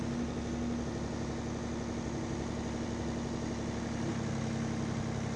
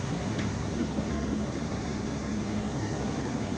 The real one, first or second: first